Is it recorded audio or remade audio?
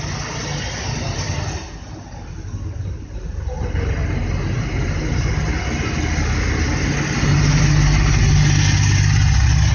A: recorded